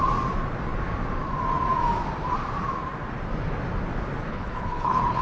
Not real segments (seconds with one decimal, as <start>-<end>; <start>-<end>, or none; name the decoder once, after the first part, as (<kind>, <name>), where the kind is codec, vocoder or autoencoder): 4.3-5.2 (codec, HILCodec)